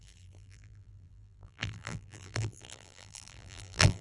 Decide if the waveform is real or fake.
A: fake